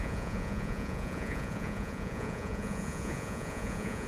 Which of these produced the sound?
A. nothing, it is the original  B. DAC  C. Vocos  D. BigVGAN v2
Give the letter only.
C